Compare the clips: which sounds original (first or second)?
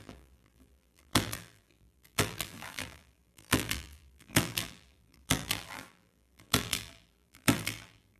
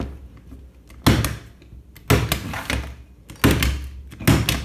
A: second